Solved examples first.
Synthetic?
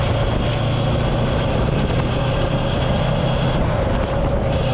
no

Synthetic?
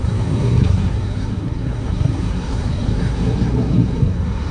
yes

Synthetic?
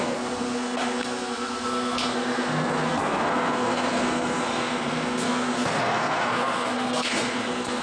yes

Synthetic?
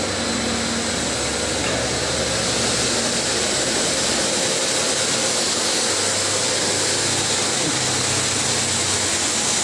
no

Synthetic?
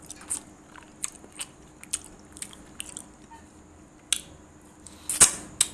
no